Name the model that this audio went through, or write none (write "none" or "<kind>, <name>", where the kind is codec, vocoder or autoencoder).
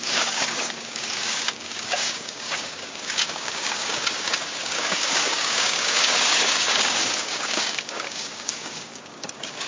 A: codec, DAC